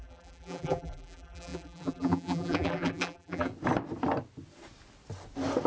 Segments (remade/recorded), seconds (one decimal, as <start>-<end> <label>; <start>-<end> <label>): 0.0-3.5 remade; 3.5-5.7 recorded